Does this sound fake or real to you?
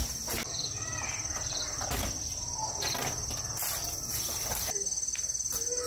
real